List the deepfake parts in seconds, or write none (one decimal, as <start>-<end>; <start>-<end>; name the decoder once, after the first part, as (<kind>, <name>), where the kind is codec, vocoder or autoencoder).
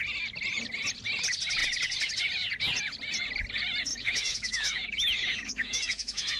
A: 3.9-6.4 (autoencoder, DAC-VAE)